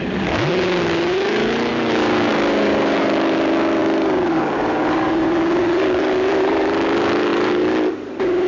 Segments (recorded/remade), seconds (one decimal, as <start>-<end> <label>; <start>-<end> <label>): 0.0-8.5 remade